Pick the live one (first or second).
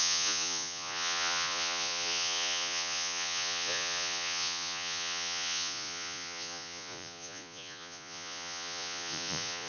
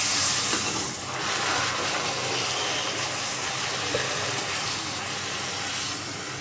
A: second